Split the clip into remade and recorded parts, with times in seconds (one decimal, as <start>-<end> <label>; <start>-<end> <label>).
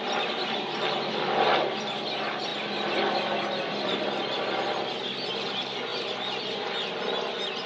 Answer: 0.0-7.7 recorded